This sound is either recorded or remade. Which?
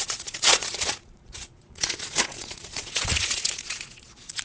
remade